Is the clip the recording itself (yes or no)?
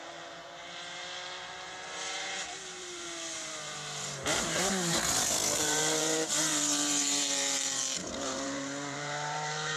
no